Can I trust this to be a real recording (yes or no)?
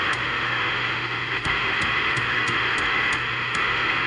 no